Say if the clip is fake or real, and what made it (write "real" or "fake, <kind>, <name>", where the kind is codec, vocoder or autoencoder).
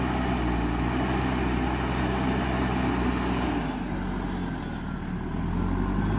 real